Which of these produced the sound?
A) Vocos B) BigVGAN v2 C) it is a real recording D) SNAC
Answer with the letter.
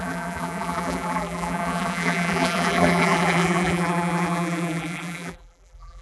B